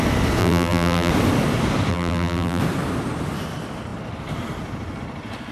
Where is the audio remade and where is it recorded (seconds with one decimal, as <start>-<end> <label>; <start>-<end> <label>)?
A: 0.0-0.4 recorded; 0.4-1.1 remade; 1.1-1.9 recorded; 1.9-2.6 remade; 2.6-5.5 recorded